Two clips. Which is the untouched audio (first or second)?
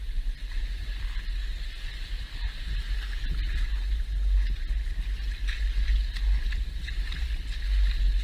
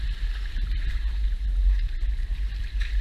first